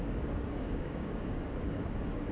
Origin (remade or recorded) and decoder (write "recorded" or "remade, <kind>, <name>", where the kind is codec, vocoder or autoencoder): remade, codec, DAC